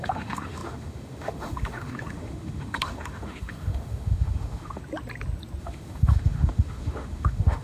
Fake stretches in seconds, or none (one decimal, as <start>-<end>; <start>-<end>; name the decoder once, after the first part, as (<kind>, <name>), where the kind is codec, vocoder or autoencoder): 0.0-4.8 (autoencoder, DAC-VAE); 5.6-7.6